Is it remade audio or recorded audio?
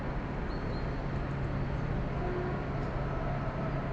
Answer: recorded